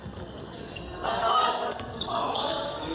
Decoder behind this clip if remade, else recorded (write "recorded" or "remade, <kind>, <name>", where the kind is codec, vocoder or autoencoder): remade, codec, SNAC